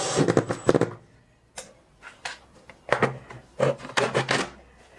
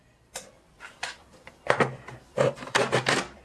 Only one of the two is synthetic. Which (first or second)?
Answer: second